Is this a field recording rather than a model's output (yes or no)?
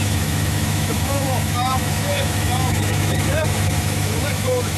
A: no